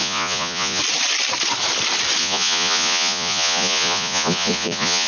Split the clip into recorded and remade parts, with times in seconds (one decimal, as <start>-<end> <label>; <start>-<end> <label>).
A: 0.0-0.8 remade; 0.8-2.2 recorded; 2.2-5.1 remade